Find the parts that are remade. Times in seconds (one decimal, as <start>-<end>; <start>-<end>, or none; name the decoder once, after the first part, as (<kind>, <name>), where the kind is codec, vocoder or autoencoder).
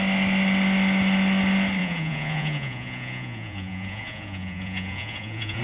1.8-5.6 (vocoder, Vocos)